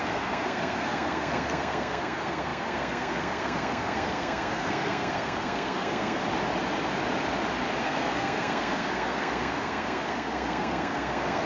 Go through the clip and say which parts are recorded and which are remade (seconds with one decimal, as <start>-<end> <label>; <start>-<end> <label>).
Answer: 0.0-6.2 remade; 6.2-7.8 recorded; 7.8-11.5 remade